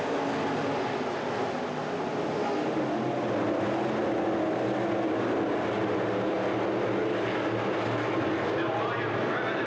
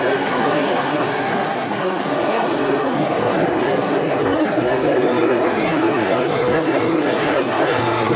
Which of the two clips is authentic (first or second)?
first